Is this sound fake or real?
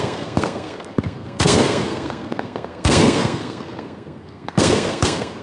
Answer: fake